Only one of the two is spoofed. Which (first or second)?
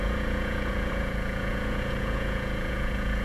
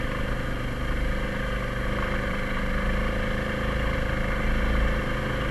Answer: first